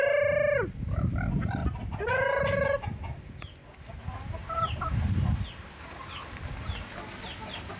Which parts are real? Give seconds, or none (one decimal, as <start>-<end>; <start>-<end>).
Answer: 0.0-7.8